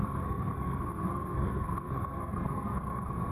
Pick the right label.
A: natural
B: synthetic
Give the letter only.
B